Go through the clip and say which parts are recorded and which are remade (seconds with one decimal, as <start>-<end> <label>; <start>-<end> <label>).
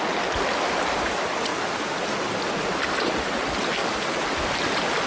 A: 0.0-5.1 recorded